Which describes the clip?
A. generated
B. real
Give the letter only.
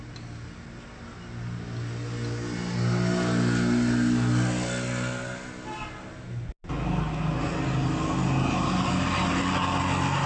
B